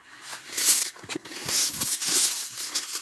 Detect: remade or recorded remade